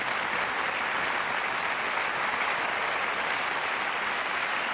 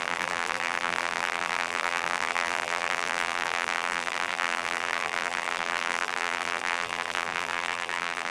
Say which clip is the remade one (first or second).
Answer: second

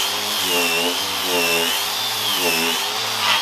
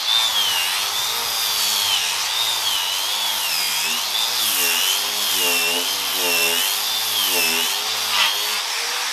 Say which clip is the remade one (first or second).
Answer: first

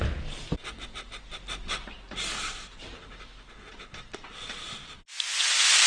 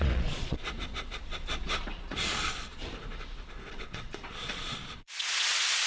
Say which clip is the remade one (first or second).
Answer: second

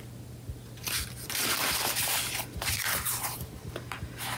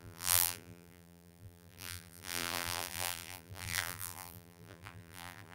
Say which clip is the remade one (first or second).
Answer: second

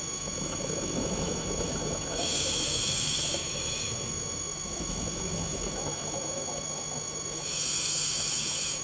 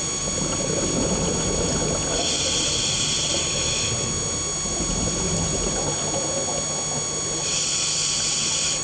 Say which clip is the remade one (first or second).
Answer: first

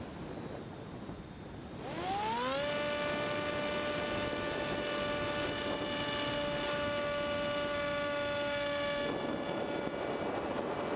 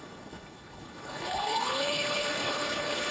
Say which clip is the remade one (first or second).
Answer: second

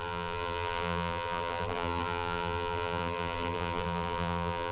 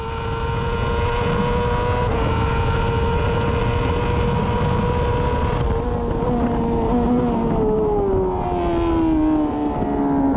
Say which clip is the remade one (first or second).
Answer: first